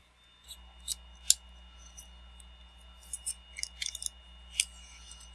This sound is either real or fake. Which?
real